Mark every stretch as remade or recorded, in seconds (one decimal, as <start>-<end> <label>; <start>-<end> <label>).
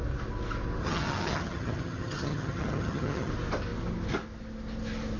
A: 0.0-0.8 recorded; 0.8-3.3 remade; 3.3-5.2 recorded